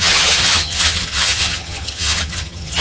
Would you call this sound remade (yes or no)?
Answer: yes